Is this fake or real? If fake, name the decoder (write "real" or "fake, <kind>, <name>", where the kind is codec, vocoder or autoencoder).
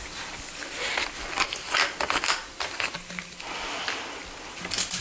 real